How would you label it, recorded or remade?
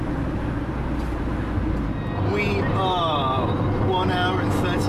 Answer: recorded